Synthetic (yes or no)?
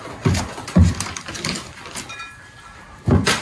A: no